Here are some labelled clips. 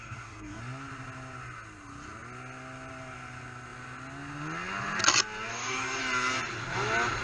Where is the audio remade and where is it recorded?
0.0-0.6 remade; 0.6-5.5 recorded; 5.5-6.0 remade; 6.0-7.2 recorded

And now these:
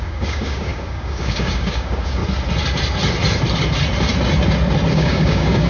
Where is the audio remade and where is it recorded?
0.0-2.2 remade; 2.2-4.9 recorded; 4.9-5.7 remade

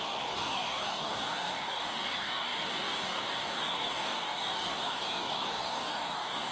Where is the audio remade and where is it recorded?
0.0-6.5 remade

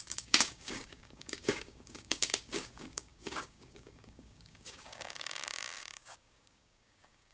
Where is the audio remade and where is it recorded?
0.0-7.3 remade